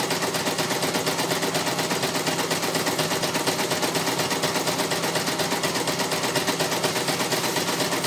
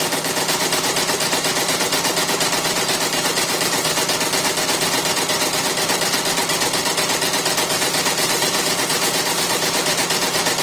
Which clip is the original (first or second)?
first